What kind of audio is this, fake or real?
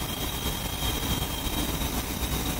real